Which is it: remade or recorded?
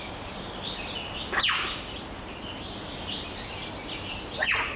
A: recorded